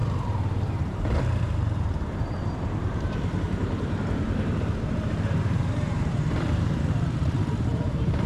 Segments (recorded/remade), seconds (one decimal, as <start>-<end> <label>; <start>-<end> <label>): 0.0-8.3 remade